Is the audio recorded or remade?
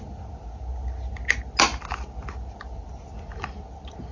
recorded